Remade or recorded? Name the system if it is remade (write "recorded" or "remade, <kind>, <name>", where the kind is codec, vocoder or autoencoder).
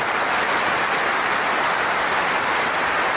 recorded